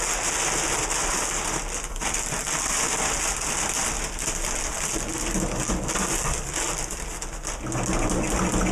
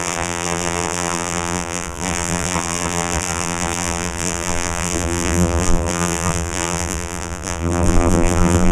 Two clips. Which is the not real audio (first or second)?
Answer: second